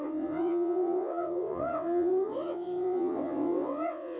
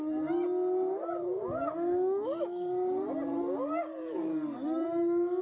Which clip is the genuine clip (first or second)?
second